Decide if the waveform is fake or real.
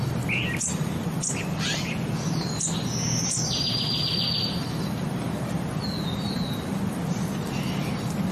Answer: real